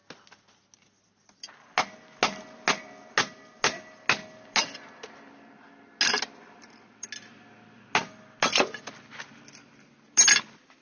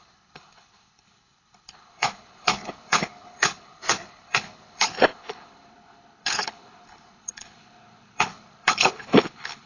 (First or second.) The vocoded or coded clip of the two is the second